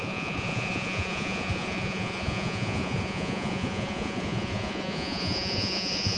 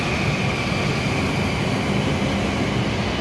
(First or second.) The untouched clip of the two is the second